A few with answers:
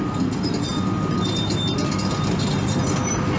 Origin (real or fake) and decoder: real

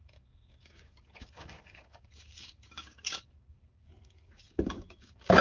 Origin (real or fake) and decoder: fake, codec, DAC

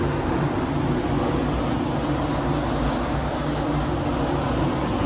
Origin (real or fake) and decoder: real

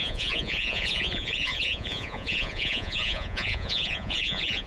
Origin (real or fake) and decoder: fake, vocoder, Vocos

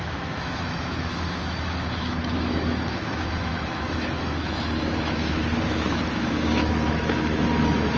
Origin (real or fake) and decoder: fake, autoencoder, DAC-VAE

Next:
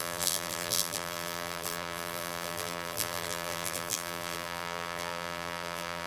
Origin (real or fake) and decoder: fake, vocoder, BigVGAN v2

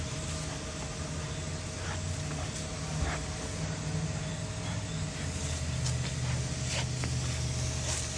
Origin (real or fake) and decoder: real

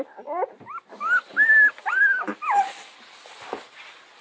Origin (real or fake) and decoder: real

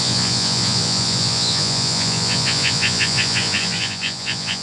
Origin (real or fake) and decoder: fake, vocoder, Vocos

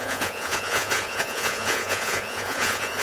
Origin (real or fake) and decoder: fake, vocoder, Vocos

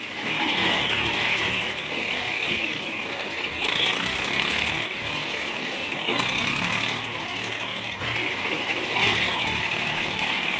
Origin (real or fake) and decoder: fake, codec, DAC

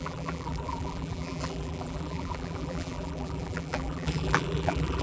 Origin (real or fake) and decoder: fake, vocoder, BigVGAN v2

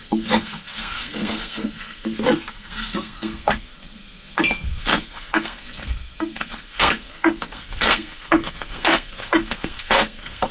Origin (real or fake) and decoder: fake, codec, SNAC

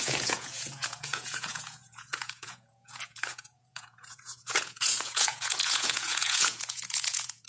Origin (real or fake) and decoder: fake, vocoder, Vocos